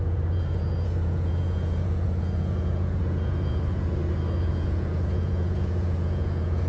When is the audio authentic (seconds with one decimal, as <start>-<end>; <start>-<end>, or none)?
4.0-4.5